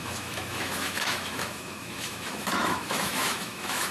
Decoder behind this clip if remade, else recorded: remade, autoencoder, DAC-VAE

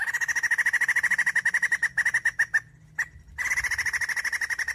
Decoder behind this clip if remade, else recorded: recorded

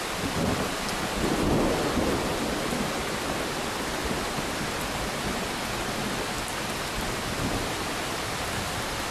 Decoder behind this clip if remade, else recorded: recorded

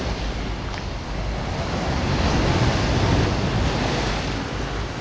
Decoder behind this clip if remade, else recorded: recorded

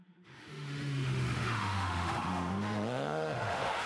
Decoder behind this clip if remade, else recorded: remade, autoencoder, DAC-VAE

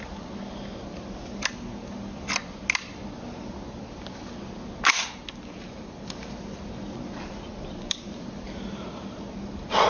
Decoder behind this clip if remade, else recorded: recorded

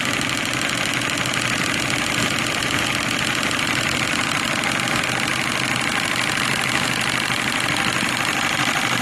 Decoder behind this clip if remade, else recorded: recorded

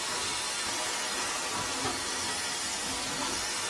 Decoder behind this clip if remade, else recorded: recorded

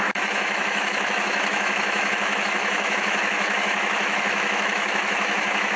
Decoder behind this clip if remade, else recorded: remade, autoencoder, DAC-VAE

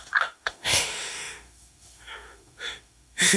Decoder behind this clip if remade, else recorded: remade, autoencoder, DAC-VAE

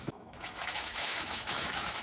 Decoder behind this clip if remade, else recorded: remade, autoencoder, DAC-VAE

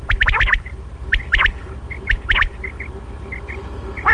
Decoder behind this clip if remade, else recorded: recorded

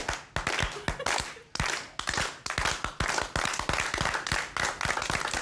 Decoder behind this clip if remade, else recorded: recorded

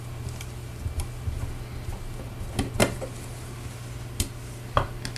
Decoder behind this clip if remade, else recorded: recorded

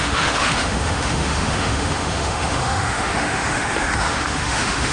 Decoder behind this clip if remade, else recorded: remade, autoencoder, DAC-VAE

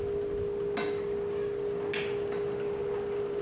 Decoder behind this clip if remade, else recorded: recorded